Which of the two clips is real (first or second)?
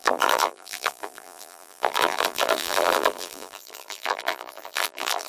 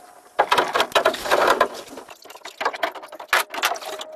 second